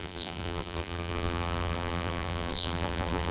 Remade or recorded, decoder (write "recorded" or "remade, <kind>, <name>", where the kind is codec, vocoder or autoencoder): remade, vocoder, BigVGAN v2